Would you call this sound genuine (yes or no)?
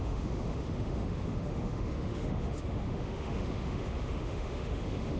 no